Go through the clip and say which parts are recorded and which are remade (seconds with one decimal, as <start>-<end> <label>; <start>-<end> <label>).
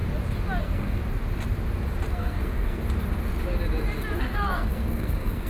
0.0-0.6 recorded; 0.6-1.0 remade; 1.0-2.1 recorded; 2.1-2.8 remade; 2.8-4.2 recorded; 4.2-5.5 remade